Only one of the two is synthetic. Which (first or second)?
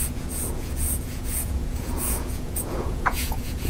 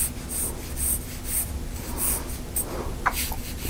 first